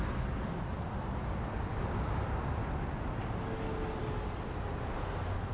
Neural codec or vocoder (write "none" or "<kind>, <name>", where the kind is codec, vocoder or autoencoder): none